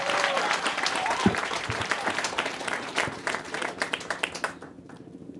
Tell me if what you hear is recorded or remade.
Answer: remade